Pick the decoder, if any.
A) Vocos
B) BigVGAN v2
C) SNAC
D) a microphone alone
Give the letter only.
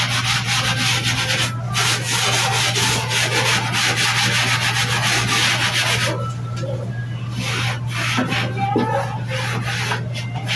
D